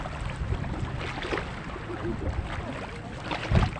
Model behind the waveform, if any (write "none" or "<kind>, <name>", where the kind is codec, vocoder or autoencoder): none